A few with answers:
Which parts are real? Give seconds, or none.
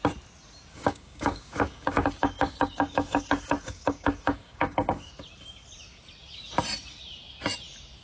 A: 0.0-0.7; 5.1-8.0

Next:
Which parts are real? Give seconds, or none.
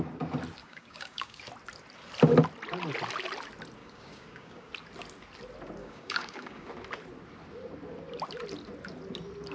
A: 0.0-0.6; 1.4-3.8; 4.7-5.8; 6.7-9.5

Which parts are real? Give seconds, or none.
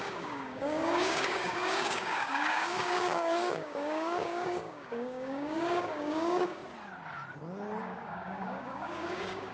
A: 6.6-7.8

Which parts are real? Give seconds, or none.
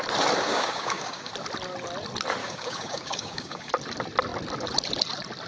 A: 0.0-0.5; 1.3-2.4; 3.7-5.5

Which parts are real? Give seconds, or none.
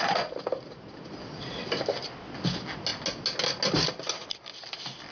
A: 0.0-5.1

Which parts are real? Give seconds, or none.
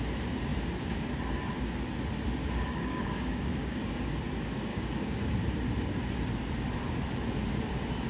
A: 0.0-2.4; 4.2-4.7; 5.3-8.1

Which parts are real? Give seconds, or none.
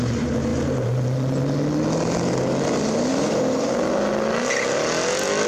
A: 0.0-3.1; 3.7-5.5